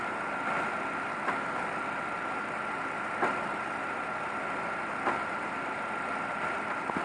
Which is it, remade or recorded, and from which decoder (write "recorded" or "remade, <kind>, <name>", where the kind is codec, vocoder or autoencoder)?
recorded